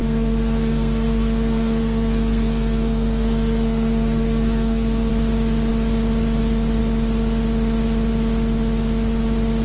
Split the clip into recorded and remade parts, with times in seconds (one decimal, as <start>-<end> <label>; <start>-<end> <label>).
0.0-5.1 remade; 5.1-9.6 recorded